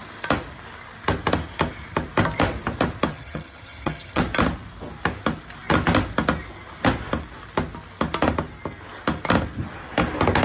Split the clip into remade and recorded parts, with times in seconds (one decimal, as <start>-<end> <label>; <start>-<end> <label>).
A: 0.0-3.1 recorded; 3.1-4.2 remade; 4.2-10.4 recorded